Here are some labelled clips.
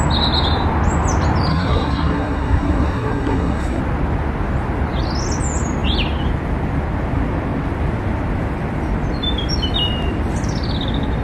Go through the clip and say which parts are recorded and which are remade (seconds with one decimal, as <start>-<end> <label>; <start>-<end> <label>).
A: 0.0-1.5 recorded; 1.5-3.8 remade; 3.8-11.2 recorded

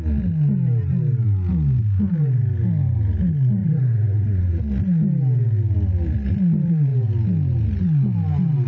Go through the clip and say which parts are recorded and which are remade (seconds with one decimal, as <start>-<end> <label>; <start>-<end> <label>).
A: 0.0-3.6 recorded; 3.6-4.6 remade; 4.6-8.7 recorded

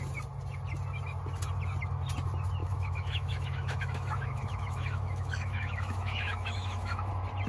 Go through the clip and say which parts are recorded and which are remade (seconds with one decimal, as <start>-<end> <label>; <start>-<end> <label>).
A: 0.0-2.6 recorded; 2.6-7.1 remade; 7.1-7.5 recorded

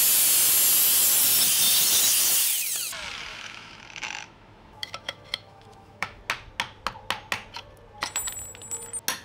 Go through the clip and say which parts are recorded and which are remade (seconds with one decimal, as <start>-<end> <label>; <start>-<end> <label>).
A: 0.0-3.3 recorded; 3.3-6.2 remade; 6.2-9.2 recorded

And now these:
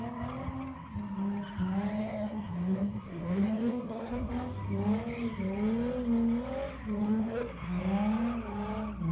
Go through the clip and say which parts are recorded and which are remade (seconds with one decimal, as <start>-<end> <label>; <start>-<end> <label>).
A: 0.0-2.0 recorded; 2.0-4.3 remade; 4.3-7.0 recorded; 7.0-7.8 remade; 7.8-9.1 recorded

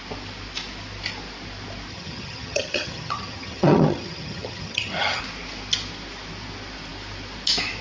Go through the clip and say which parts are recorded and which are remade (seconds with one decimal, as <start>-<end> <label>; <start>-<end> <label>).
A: 0.0-1.9 recorded; 1.9-5.2 remade; 5.2-7.8 recorded